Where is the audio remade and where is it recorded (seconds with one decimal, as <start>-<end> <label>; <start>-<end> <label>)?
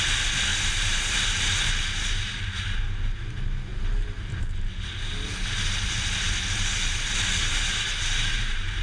0.0-0.5 recorded; 0.5-1.4 remade; 1.4-3.7 recorded; 3.7-4.8 remade; 4.8-7.4 recorded; 7.4-8.8 remade